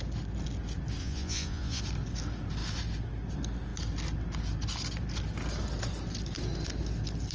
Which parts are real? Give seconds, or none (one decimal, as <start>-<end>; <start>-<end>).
0.0-1.0; 1.8-7.3